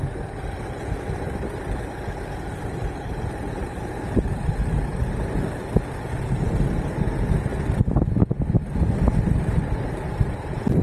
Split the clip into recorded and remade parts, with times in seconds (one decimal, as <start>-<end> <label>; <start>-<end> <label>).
0.0-10.8 recorded